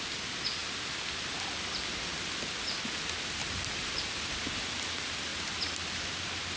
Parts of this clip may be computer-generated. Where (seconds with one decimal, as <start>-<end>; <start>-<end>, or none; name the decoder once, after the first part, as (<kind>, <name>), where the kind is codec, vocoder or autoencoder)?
3.4-4.0 (vocoder, BigVGAN v2); 5.3-6.1